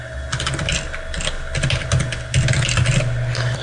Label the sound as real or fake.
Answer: real